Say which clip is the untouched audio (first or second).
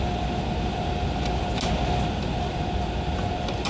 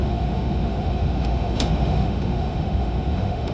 first